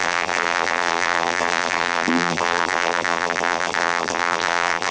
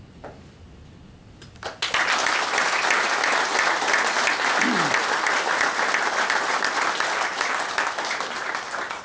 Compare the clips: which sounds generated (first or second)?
first